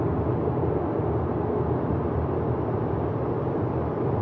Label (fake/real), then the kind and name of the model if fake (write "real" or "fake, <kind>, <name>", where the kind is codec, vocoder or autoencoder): real